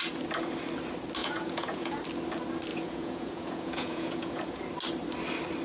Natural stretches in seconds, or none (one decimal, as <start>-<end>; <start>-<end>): 0.0-1.2; 2.0-2.7; 4.6-5.6